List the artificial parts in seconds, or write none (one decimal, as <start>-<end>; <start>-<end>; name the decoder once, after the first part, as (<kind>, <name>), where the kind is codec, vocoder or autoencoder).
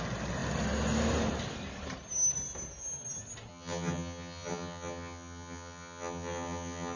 3.5-7.0 (vocoder, HiFi-GAN)